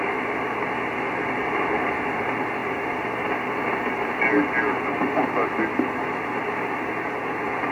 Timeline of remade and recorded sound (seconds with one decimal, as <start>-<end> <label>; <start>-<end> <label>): 0.0-7.7 recorded